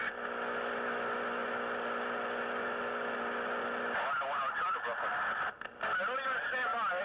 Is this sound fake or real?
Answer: real